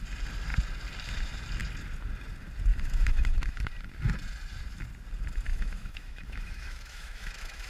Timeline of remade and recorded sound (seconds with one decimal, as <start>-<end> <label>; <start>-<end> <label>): 0.0-2.7 recorded; 2.7-3.7 remade; 3.7-5.5 recorded; 5.5-7.7 remade